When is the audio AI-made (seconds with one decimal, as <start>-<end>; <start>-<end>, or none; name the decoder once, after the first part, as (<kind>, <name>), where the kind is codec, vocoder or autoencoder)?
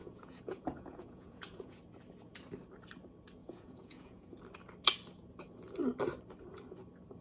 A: 0.0-1.8 (vocoder, Vocos); 3.4-4.4